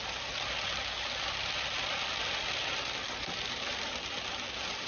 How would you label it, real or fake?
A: real